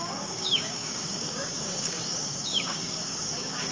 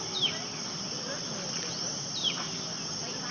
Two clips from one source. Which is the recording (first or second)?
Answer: second